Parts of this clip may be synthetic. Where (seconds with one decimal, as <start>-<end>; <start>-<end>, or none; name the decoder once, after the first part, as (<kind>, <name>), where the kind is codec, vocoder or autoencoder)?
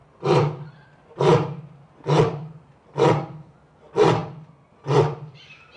none